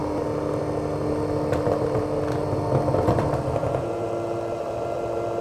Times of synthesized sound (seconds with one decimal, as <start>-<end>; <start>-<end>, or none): 3.6-4.1

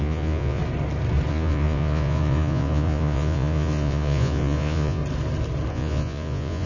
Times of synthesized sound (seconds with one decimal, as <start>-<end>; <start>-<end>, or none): 0.0-0.6; 1.3-5.0; 5.7-6.7

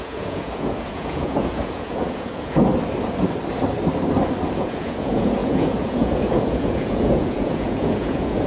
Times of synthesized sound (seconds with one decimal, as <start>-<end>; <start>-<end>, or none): 0.0-2.7; 4.5-8.5

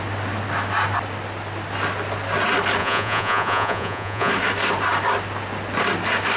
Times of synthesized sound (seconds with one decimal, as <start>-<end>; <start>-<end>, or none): 2.8-4.3

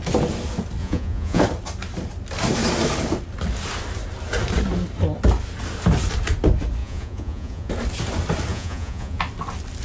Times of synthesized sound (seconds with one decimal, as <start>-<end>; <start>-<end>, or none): 0.8-1.4; 6.8-7.7; 8.5-9.2

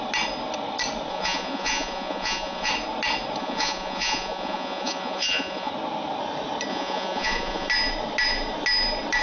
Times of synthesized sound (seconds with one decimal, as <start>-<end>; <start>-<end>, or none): 1.1-2.7; 3.4-5.7; 6.7-7.7

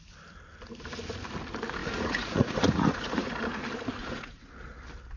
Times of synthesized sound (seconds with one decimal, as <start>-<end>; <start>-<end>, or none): 1.8-3.4; 4.0-4.5

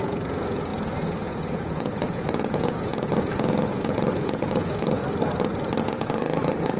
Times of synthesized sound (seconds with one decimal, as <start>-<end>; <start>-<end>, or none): 0.0-5.0; 5.8-6.8